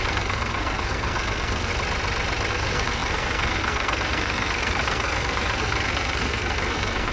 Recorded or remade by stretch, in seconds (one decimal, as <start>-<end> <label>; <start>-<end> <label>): 0.0-1.7 remade; 1.7-2.5 recorded; 2.5-7.1 remade